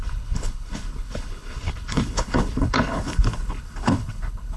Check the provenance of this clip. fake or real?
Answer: fake